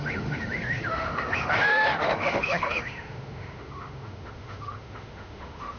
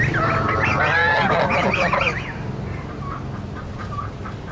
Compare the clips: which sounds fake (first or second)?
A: first